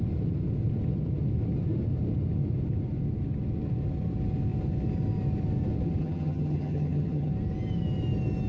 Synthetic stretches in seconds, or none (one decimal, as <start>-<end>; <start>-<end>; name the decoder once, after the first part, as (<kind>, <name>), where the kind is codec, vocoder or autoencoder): 6.0-7.3 (vocoder, HiFi-GAN)